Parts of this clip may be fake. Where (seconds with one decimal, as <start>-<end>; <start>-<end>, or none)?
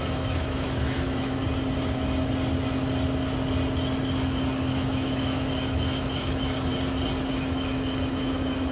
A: 0.0-1.4; 4.6-6.7; 7.3-8.7